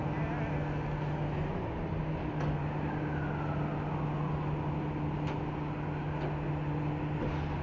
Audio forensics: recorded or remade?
recorded